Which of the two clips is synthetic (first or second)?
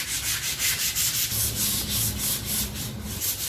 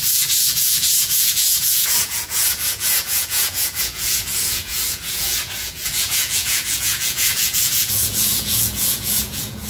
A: second